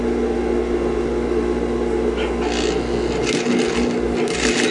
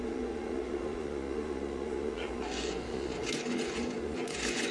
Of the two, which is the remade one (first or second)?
second